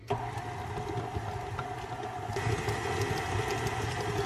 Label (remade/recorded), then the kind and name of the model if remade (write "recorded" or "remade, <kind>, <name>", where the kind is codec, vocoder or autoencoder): recorded